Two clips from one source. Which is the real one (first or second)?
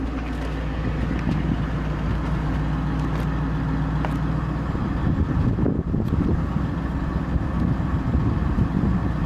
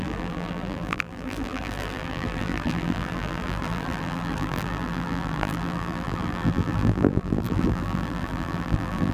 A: first